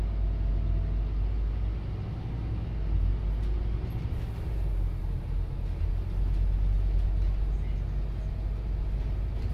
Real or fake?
real